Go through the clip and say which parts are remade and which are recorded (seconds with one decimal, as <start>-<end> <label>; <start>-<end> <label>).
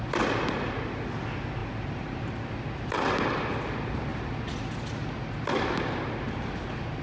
0.0-1.6 recorded; 1.6-2.5 remade; 2.5-7.0 recorded